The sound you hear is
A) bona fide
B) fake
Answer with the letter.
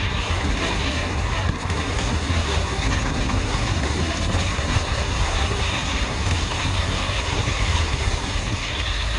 B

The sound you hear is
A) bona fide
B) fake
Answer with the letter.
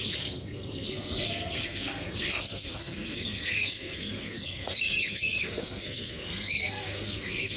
B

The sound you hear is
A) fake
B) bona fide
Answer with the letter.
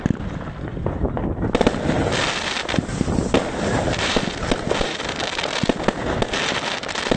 B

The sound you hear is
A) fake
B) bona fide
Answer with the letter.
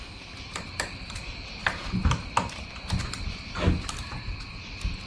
B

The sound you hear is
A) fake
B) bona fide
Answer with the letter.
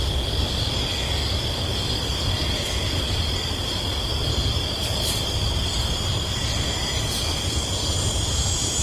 B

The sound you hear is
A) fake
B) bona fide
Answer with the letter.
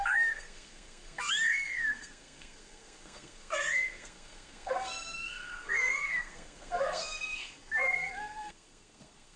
A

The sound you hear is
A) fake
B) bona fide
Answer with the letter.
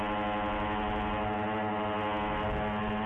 B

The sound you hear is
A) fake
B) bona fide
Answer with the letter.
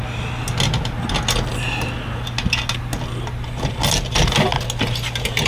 B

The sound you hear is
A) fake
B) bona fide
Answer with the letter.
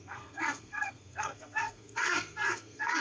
A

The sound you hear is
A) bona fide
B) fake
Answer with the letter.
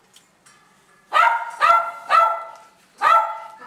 A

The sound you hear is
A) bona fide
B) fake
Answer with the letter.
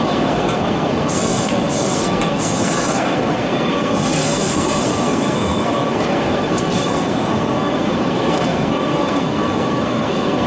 B